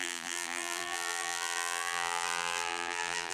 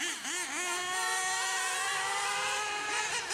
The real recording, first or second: second